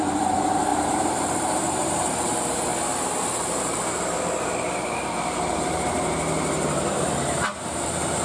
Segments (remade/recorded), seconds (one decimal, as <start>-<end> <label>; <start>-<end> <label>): 0.0-2.7 remade; 2.7-5.4 recorded; 5.4-8.2 remade